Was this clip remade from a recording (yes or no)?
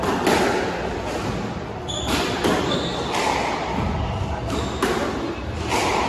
no